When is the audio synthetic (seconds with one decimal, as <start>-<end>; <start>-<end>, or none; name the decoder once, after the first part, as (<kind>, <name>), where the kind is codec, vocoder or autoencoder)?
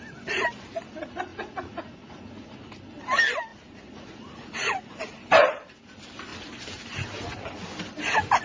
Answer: 1.3-2.5 (vocoder, Vocos); 3.5-5.0